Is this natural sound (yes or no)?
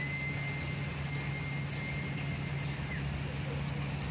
yes